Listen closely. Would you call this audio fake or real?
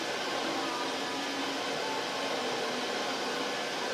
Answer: real